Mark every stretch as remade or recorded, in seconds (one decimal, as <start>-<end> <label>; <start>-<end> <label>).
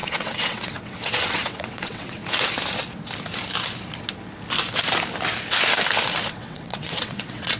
0.0-2.2 remade; 2.2-6.3 recorded; 6.3-7.6 remade